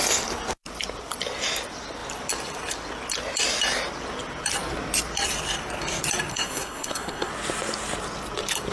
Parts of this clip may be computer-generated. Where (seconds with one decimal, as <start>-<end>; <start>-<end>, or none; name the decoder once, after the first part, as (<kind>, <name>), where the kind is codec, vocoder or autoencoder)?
6.3-7.3 (codec, SNAC)